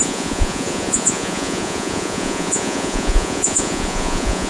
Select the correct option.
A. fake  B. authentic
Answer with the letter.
A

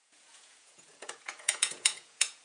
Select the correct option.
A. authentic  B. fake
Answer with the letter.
B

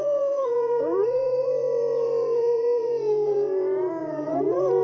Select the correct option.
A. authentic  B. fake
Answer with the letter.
B